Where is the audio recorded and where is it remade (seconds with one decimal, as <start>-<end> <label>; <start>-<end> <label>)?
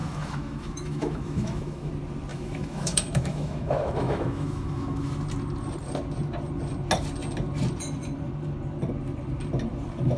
0.0-1.9 remade; 1.9-2.3 recorded; 2.3-5.1 remade; 5.1-10.2 recorded